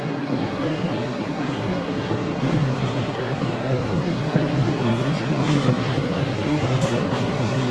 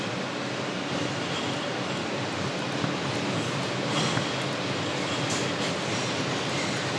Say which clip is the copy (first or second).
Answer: first